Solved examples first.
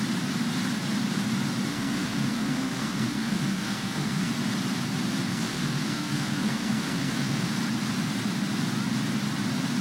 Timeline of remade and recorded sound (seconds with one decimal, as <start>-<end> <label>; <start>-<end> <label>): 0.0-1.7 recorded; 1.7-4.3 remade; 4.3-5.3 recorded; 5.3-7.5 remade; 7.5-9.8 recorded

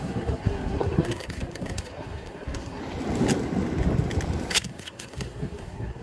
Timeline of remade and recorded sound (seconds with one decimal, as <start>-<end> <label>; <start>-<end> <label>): 0.0-2.8 remade; 2.8-4.5 recorded; 4.5-6.0 remade

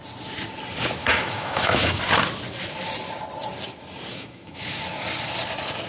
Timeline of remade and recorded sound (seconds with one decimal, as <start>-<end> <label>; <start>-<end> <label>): 0.0-1.0 recorded; 1.0-2.0 remade; 2.0-4.1 recorded; 4.1-4.6 remade; 4.6-5.9 recorded

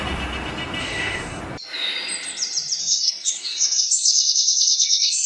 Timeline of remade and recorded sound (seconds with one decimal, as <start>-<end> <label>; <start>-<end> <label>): 0.0-0.8 recorded; 0.8-1.4 remade; 1.4-2.8 recorded; 2.8-5.3 remade

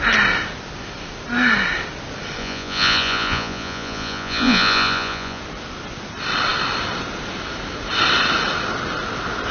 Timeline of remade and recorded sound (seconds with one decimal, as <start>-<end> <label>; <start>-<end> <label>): 0.0-2.4 recorded; 2.4-5.4 remade; 5.4-9.5 recorded